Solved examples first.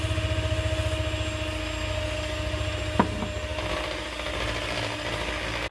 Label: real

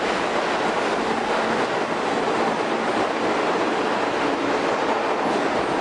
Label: real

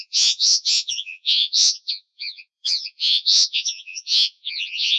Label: fake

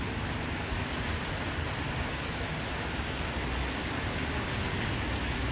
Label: real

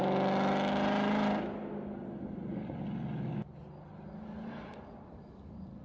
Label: real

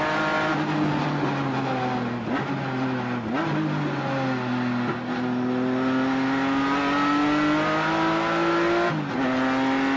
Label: real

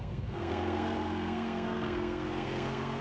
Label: fake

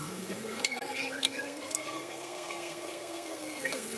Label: fake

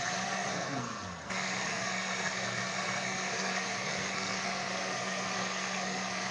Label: fake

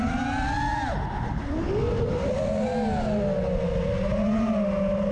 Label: real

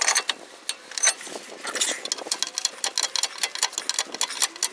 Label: real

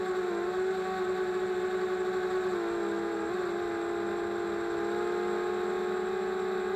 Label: real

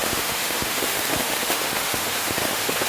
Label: fake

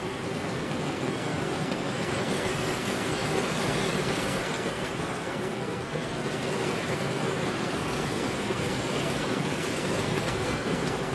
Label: fake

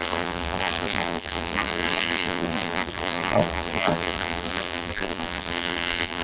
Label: fake